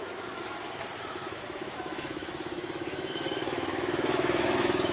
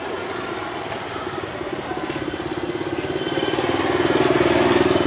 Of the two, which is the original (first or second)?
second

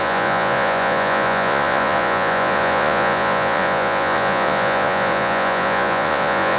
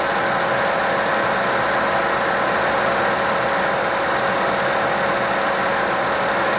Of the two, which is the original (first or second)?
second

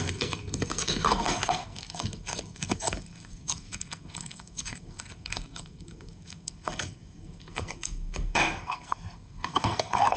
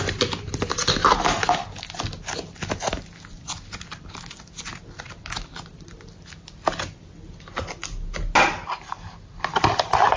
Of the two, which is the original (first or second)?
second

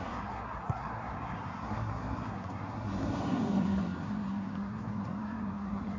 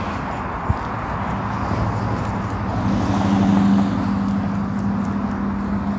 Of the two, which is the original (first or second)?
second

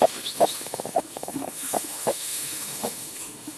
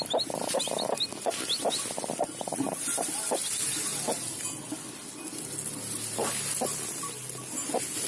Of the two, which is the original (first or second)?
second